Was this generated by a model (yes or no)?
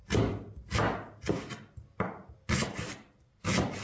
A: no